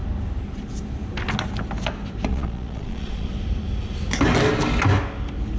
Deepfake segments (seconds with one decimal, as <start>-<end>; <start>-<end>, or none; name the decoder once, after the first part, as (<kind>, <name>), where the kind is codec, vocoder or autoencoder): 2.3-3.3 (vocoder, Vocos)

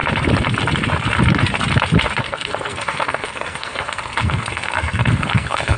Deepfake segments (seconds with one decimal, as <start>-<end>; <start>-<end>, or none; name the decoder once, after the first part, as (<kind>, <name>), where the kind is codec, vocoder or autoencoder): 2.2-5.8 (codec, SNAC)

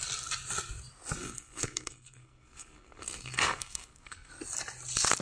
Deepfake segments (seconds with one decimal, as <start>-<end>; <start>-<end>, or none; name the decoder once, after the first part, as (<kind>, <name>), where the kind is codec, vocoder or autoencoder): 1.2-4.3 (codec, SNAC)

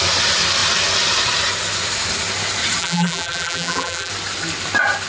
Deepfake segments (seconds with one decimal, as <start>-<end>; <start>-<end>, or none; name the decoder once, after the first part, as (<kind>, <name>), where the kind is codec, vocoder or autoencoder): 2.8-4.1 (vocoder, BigVGAN v2)

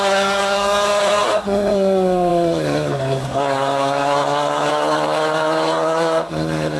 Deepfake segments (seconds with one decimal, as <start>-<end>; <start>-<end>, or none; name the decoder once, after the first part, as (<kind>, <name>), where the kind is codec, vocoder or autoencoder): 0.0-6.8 (codec, SNAC)